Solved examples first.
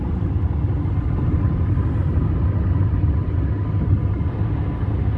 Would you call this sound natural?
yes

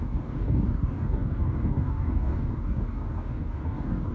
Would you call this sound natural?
no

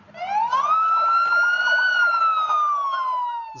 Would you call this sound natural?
yes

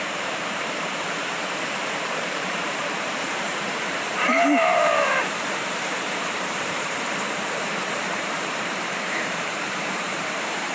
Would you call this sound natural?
no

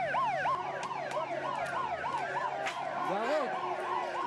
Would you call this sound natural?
yes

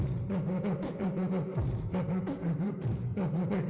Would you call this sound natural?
no